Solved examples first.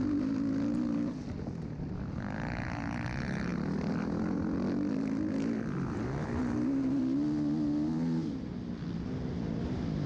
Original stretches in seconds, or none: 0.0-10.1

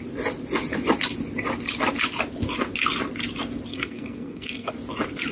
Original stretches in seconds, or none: 0.0-3.7; 4.7-5.3

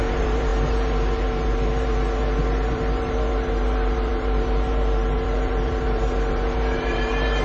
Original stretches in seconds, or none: none

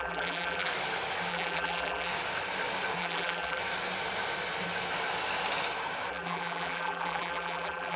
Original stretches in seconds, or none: 0.7-1.3; 2.1-3.0; 3.6-6.1

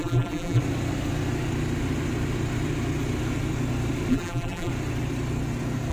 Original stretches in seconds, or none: 0.6-4.1; 4.7-5.9

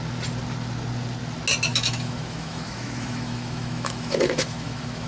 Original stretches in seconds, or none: 0.0-1.7

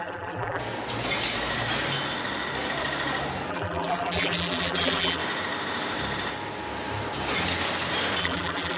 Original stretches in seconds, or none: 0.6-3.5; 5.2-8.2

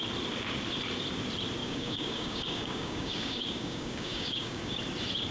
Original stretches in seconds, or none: 0.0-1.6; 4.8-5.3